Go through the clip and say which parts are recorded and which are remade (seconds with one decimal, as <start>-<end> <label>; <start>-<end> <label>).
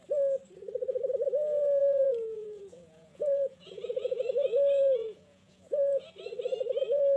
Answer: 0.0-1.8 recorded; 1.8-6.1 remade; 6.1-7.2 recorded